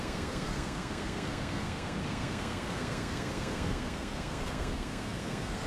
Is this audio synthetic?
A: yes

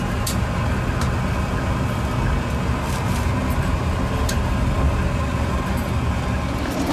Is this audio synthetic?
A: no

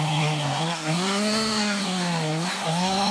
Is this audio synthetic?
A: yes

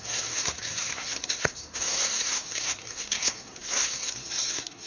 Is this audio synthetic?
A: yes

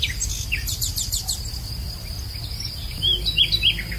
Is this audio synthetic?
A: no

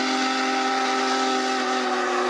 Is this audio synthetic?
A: no